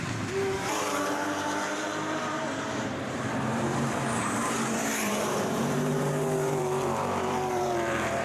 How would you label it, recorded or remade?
remade